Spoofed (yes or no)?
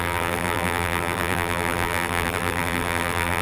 yes